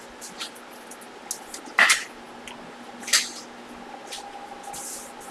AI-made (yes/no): no